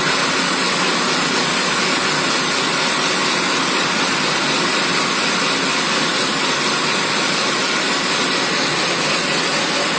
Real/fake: real